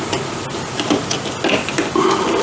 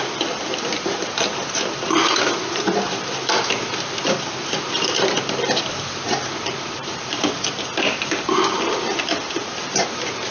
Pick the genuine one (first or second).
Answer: first